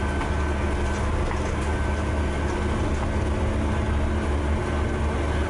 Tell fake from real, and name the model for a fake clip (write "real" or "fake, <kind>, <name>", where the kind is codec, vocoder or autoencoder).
real